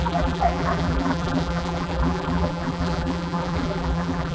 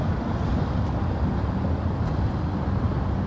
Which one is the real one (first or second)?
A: second